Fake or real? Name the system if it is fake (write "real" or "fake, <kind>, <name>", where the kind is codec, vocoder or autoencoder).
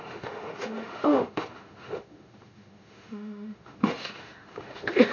fake, autoencoder, DAC-VAE